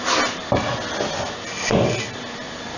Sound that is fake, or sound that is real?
real